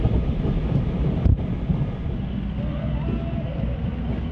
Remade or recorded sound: recorded